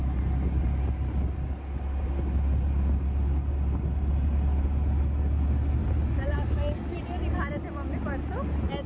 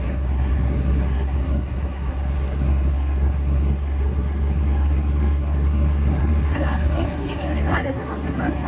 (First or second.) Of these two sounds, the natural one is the first